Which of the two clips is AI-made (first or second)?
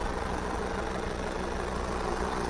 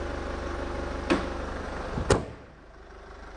first